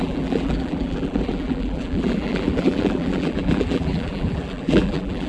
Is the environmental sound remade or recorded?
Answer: remade